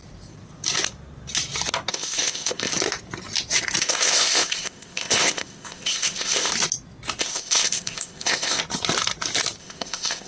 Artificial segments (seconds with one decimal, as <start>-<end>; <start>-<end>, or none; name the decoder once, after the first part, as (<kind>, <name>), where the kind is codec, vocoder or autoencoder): 1.9-2.7 (codec, ZipCodec); 3.8-6.5; 7.2-8.6; 9.6-10.3